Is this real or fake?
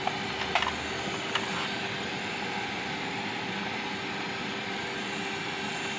real